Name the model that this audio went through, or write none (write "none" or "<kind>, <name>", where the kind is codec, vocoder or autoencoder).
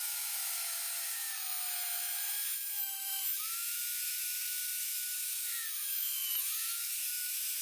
autoencoder, DAC-VAE